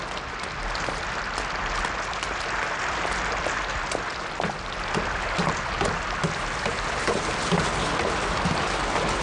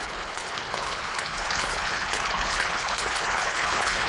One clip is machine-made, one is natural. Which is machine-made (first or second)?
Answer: second